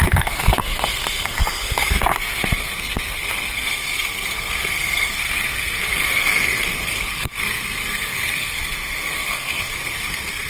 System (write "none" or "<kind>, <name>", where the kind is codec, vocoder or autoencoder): codec, SNAC